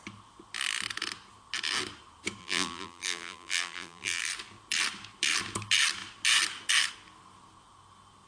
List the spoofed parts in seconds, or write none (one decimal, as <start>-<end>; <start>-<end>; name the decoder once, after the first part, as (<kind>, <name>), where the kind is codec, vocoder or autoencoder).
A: 2.4-4.2 (vocoder, BigVGAN v2)